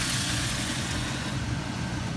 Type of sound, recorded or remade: remade